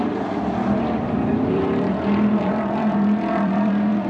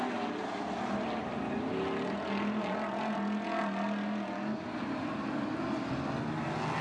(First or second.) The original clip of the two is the second